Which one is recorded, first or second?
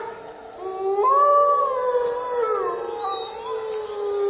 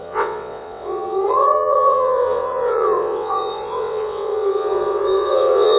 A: first